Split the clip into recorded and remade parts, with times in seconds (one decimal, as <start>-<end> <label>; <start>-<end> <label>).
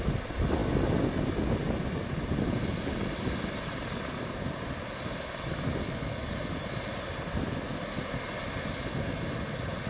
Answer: 0.0-9.9 recorded